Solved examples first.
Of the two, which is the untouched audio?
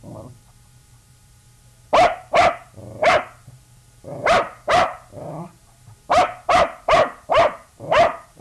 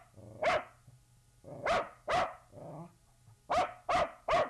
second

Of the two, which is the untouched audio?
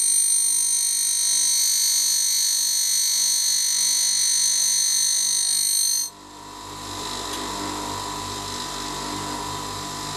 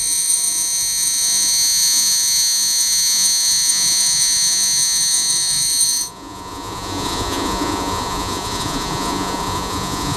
first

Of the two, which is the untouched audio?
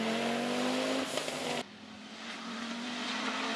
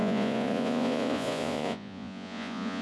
first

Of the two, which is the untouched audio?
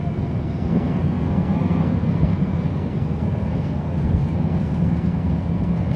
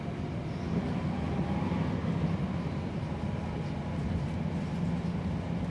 second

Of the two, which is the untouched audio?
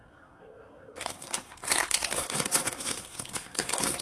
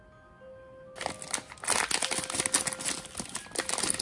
second